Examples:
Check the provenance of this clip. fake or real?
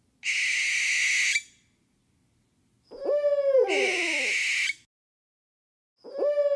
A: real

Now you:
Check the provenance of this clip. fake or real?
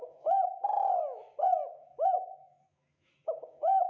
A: fake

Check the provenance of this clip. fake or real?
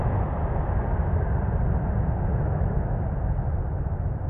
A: real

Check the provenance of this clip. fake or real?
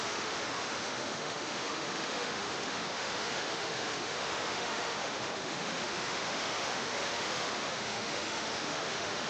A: fake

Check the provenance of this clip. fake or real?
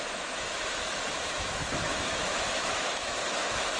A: fake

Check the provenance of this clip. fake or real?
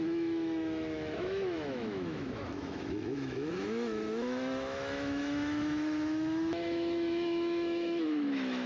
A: fake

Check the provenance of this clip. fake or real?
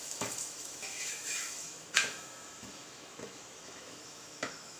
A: fake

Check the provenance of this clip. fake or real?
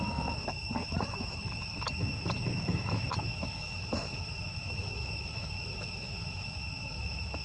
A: fake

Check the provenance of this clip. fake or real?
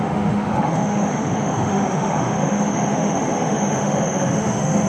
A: fake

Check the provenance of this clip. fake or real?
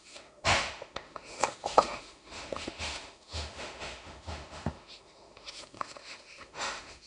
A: fake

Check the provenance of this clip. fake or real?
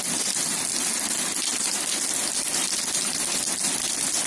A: real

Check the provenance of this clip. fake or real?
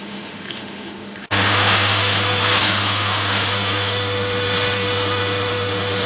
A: fake